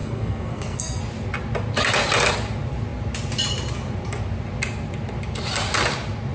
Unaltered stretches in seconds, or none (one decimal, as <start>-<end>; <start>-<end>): 1.0-6.3